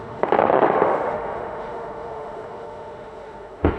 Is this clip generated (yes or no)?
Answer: yes